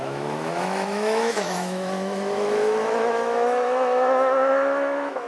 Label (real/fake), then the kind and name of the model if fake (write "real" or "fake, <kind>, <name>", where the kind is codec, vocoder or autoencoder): fake, autoencoder, DAC-VAE